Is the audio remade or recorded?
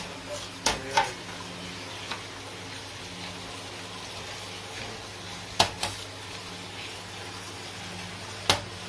recorded